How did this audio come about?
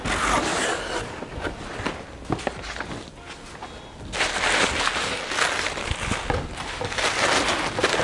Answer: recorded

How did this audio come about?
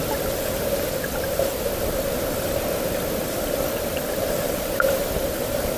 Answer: remade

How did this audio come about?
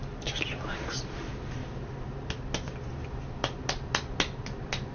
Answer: recorded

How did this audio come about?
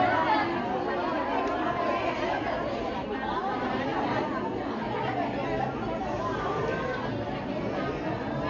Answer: recorded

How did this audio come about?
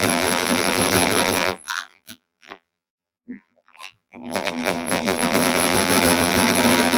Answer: remade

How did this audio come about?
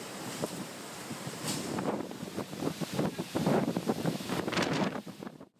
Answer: remade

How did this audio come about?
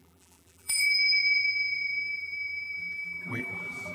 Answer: remade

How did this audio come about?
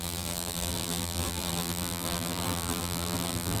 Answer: remade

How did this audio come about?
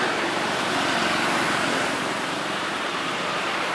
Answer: remade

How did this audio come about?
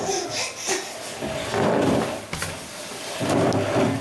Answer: recorded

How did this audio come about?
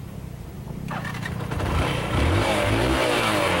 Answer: remade